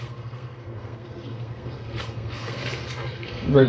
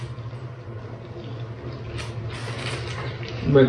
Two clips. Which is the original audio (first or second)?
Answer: second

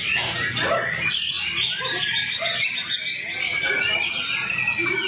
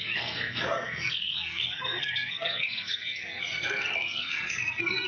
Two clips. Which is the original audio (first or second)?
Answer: first